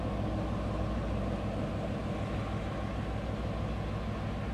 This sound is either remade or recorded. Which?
recorded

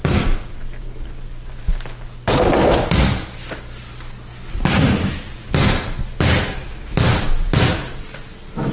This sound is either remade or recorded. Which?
recorded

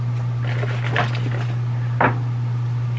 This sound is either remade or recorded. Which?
recorded